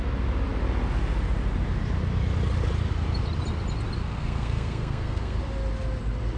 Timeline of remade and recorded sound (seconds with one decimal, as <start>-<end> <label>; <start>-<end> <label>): 0.0-4.0 recorded; 4.0-5.4 remade; 5.4-6.4 recorded